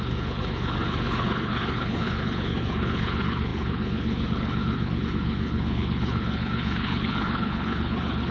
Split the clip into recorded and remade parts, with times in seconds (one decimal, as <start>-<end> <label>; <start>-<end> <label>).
0.0-8.3 remade